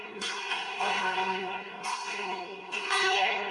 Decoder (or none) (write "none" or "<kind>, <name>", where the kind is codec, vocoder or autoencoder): codec, SNAC